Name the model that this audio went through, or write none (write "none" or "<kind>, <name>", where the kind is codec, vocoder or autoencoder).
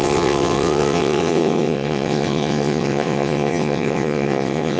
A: vocoder, WaveNeXt